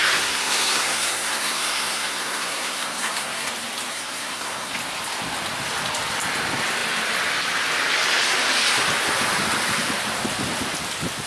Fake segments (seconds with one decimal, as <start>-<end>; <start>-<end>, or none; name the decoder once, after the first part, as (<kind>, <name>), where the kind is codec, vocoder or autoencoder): 0.0-3.5 (codec, SNAC); 3.9-4.7

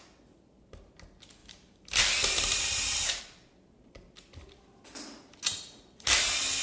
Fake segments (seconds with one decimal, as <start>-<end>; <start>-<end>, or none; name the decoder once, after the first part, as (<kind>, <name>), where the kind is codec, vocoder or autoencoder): 1.4-3.2 (vocoder, BigVGAN v2)

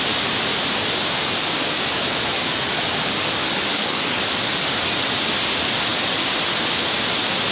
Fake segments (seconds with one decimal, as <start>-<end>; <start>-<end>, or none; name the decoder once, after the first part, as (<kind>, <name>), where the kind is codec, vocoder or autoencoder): 3.7-4.2 (codec, DAC)

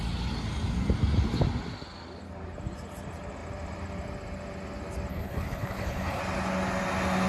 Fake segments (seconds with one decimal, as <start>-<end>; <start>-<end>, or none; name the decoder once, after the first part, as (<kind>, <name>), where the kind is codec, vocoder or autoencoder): 5.1-6.2 (codec, HILCodec)

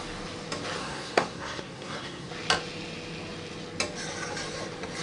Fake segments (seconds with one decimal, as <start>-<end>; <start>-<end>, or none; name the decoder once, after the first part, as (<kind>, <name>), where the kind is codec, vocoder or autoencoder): 0.8-2.3 (codec, SNAC)

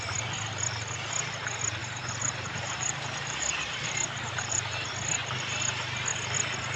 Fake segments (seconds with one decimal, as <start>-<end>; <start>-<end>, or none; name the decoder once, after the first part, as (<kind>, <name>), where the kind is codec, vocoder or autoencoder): 1.8-4.9 (vocoder, BigVGAN v2)